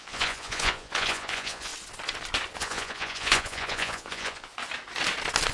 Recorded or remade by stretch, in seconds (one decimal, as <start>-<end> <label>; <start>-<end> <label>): 0.0-1.7 remade; 1.7-2.6 recorded; 2.6-4.5 remade; 4.5-5.5 recorded